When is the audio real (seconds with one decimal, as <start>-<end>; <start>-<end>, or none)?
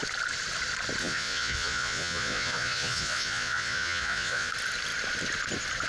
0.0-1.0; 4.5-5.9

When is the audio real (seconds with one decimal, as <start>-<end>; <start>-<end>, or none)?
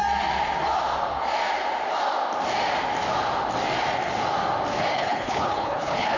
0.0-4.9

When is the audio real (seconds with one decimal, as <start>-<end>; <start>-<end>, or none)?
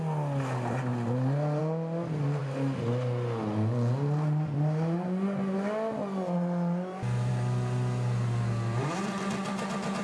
0.0-10.0